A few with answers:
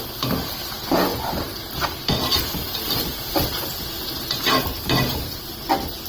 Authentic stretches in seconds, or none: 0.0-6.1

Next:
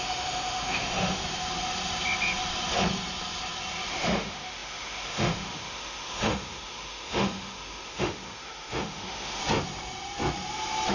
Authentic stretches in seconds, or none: 1.2-3.9; 9.4-10.9

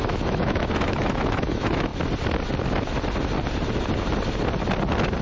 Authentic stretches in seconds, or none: 1.9-5.2

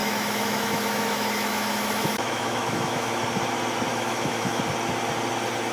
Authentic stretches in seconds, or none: 3.2-3.9; 4.6-5.7

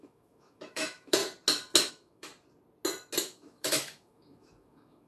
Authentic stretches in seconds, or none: 1.2-1.9; 2.3-3.2

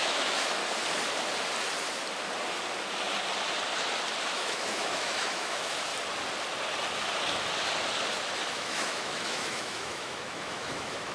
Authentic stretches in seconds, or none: 0.6-4.2; 5.9-8.5

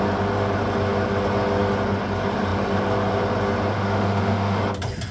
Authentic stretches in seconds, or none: 0.0-3.7; 4.6-5.1

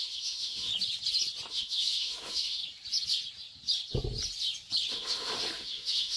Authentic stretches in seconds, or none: 0.7-1.5; 2.6-4.9